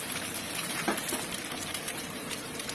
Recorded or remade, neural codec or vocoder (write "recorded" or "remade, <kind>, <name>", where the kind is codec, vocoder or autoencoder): remade, vocoder, BigVGAN v2